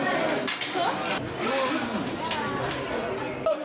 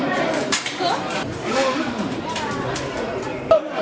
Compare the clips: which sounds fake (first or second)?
second